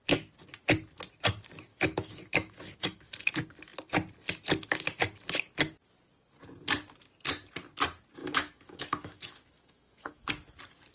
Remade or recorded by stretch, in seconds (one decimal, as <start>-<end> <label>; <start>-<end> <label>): 0.0-1.7 recorded; 1.7-3.3 remade; 3.3-8.2 recorded; 8.2-10.3 remade; 10.3-10.9 recorded